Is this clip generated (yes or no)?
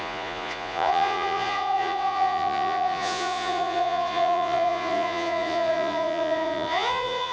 yes